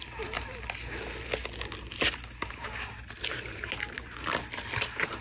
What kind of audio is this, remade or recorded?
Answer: recorded